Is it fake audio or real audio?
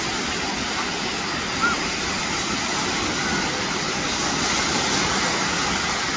real